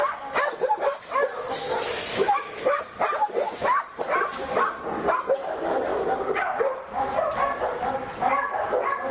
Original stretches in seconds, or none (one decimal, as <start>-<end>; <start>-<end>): 0.0-2.2; 2.8-9.1